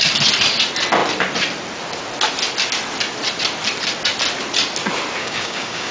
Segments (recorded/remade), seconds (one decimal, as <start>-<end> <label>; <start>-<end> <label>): 0.0-5.2 recorded; 5.2-5.9 remade